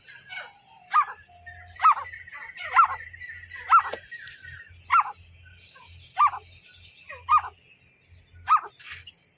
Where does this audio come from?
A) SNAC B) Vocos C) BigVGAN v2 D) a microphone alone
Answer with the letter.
D